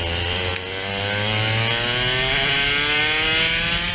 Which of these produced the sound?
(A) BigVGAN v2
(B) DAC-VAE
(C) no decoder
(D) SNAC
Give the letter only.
C